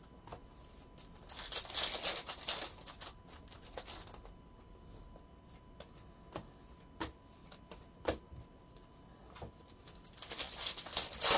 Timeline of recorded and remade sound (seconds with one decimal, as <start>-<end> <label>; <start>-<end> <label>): 0.0-11.4 recorded

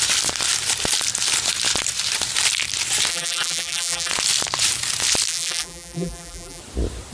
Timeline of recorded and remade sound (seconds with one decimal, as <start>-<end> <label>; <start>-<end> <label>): 0.0-3.1 recorded; 3.1-4.1 remade; 4.1-5.3 recorded; 5.3-6.6 remade; 6.6-7.1 recorded